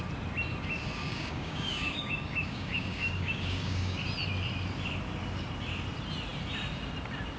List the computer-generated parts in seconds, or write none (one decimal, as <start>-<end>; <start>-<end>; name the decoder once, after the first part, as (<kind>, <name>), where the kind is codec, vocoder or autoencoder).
1.0-4.0 (codec, DAC)